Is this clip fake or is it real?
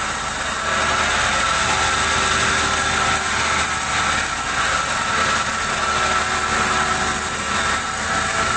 real